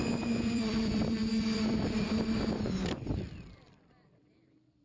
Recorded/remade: remade